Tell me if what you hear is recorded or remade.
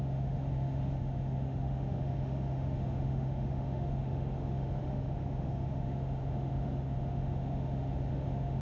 remade